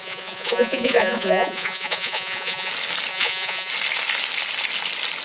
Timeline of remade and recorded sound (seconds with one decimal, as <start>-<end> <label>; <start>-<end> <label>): 0.0-2.7 remade; 2.7-3.1 recorded; 3.1-3.7 remade; 3.7-5.2 recorded